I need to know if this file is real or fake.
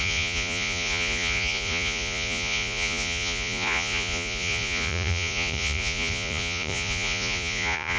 fake